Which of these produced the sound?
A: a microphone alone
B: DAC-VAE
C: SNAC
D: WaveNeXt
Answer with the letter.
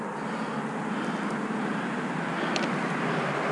A